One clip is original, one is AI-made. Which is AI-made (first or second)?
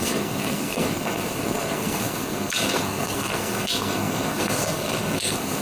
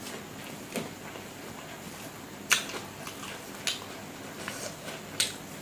first